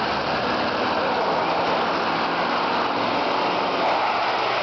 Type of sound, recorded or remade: recorded